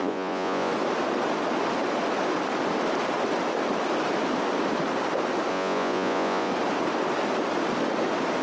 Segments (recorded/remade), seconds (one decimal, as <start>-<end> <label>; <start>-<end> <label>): 0.0-0.7 remade; 0.7-5.5 recorded; 5.5-6.5 remade; 6.5-8.4 recorded